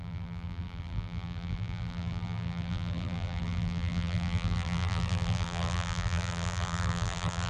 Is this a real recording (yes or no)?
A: no